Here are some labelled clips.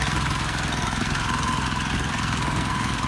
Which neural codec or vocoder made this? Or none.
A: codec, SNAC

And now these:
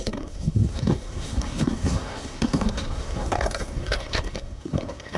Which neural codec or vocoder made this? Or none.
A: codec, SNAC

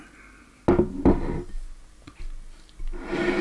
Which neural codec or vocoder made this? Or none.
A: none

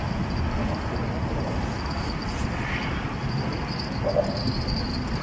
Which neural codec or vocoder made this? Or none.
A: none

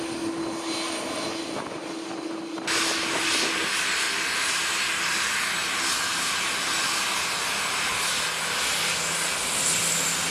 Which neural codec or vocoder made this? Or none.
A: none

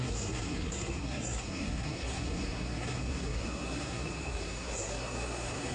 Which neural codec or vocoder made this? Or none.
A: codec, SNAC